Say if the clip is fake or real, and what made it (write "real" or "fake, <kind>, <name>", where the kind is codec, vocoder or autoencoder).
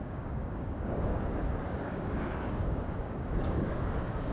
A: fake, codec, DAC